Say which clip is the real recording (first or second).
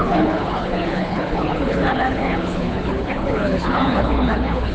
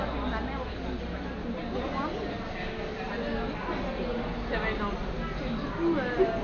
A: second